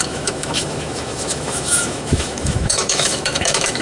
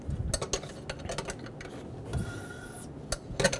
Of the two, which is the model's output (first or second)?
first